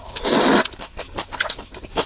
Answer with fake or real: real